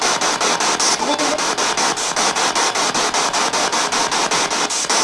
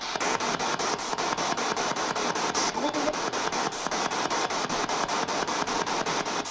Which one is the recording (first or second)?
first